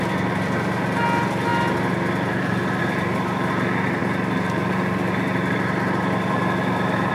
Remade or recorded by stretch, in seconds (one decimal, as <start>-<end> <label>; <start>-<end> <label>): 0.0-1.5 recorded; 1.5-2.8 remade; 2.8-4.0 recorded; 4.0-7.1 remade